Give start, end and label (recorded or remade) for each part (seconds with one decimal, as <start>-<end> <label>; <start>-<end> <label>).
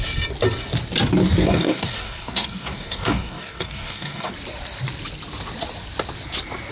0.0-1.4 recorded; 1.4-4.3 remade; 4.3-6.7 recorded